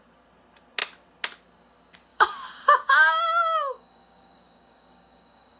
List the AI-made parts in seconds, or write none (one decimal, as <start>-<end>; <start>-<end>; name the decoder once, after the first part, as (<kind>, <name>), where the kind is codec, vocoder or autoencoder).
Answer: 2.1-5.6 (codec, DAC)